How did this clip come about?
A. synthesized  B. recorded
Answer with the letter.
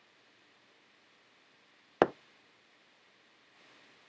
B